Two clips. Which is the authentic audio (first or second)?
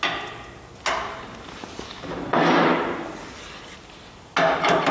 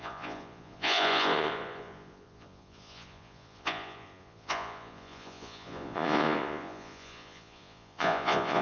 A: first